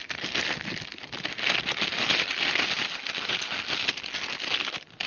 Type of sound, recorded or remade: recorded